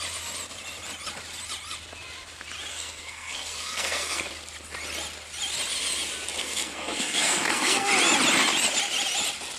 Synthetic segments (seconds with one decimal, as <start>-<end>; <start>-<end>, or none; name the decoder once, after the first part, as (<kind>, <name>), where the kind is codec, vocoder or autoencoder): 2.7-4.3 (codec, SNAC); 6.4-7.9